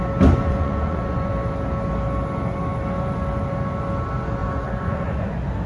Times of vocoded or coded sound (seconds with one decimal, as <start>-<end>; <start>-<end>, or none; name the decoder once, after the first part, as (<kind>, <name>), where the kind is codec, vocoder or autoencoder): 0.4-1.3 (vocoder, Vocos); 4.4-5.3